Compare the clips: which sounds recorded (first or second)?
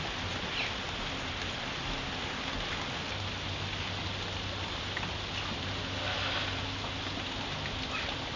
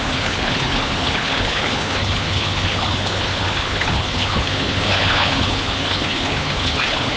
first